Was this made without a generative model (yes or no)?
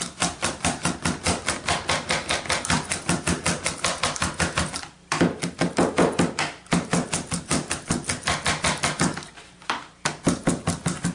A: yes